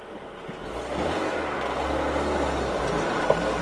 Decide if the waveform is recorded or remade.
recorded